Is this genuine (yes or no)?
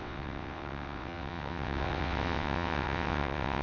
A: no